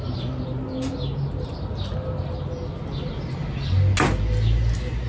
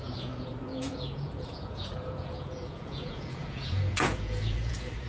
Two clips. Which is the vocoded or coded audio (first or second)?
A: second